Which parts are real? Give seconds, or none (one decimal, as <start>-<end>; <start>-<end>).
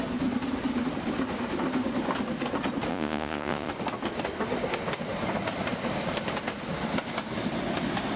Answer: 0.0-2.9; 3.7-8.2